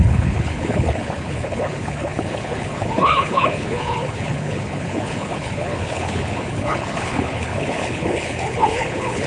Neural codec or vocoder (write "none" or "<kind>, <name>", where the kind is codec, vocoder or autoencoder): codec, HILCodec